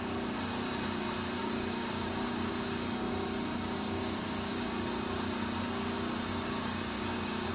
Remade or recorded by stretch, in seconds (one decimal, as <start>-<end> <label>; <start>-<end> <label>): 0.0-1.4 recorded; 1.4-2.5 remade; 2.5-4.0 recorded; 4.0-4.7 remade; 4.7-6.3 recorded; 6.3-7.5 remade